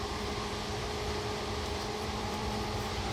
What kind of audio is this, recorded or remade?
remade